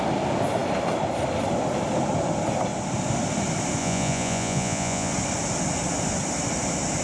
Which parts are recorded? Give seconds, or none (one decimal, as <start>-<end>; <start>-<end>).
0.0-3.8; 5.1-7.0